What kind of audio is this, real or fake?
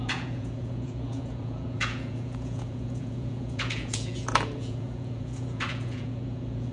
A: fake